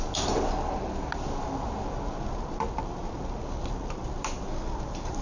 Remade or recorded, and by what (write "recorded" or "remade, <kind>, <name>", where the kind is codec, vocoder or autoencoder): recorded